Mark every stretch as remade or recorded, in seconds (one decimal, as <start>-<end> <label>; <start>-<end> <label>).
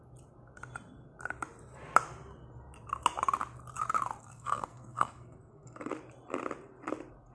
0.0-4.2 recorded; 4.2-5.9 remade; 5.9-7.3 recorded